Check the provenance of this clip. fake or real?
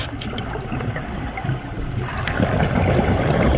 real